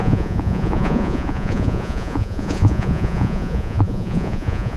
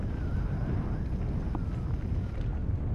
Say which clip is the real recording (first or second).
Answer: second